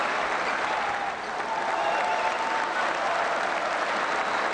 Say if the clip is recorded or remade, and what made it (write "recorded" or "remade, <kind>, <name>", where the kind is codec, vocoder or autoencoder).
recorded